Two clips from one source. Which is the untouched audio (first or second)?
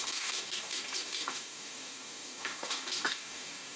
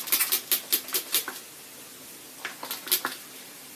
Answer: second